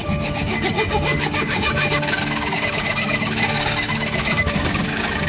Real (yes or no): no